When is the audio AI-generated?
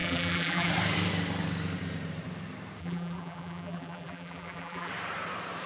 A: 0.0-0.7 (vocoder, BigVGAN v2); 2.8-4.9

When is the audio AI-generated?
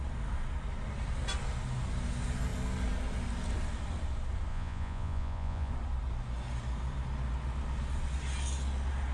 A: 4.5-5.7 (vocoder, Vocos)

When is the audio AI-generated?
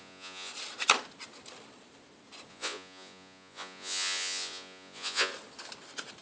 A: 0.0-0.5 (vocoder, Vocos); 2.5-5.3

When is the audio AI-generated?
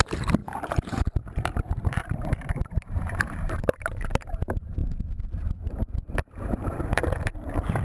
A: 0.0-4.8 (vocoder, BigVGAN v2); 6.1-7.8